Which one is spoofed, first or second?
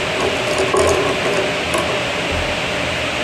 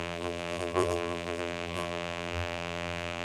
second